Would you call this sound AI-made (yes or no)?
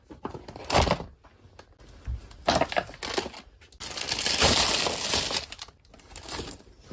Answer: no